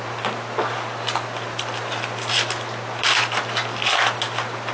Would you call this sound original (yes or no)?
yes